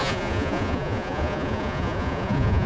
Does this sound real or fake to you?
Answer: fake